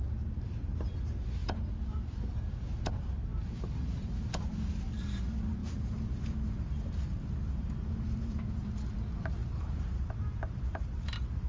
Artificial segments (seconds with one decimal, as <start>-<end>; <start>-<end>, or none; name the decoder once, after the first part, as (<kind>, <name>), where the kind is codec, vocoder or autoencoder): 5.6-8.7 (vocoder, BigVGAN v2); 9.4-11.5